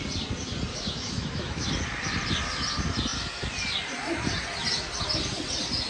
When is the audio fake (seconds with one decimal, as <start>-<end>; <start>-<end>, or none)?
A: 0.7-1.7